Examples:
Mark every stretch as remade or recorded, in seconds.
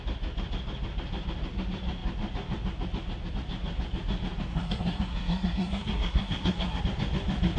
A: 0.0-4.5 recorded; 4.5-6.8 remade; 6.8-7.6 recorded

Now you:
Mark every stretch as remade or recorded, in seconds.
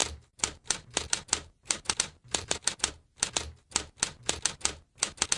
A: 0.0-2.9 remade; 2.9-5.4 recorded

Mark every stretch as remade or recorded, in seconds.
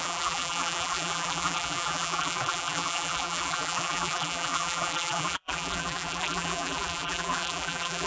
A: 0.0-8.1 remade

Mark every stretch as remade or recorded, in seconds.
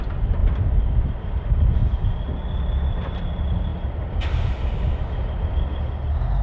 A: 0.0-6.4 recorded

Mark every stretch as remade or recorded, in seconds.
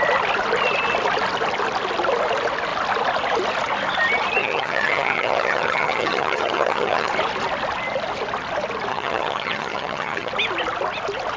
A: 0.0-4.4 recorded; 4.4-7.1 remade; 7.1-8.9 recorded; 8.9-10.3 remade; 10.3-11.4 recorded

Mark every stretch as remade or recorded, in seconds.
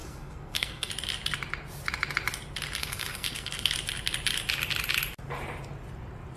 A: 0.0-0.9 remade; 0.9-2.8 recorded; 2.8-3.7 remade; 3.7-6.4 recorded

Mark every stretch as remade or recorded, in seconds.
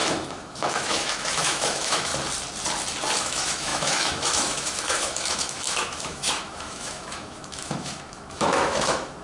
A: 0.0-2.1 remade; 2.1-3.2 recorded; 3.2-9.2 remade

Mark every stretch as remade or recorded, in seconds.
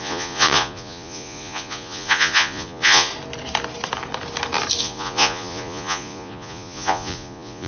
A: 0.0-3.1 remade; 3.1-4.8 recorded; 4.8-7.7 remade